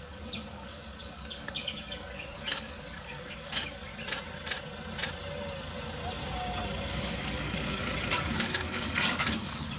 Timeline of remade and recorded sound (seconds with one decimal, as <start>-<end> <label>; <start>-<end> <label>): 0.0-3.9 remade; 3.9-6.9 recorded; 6.9-9.8 remade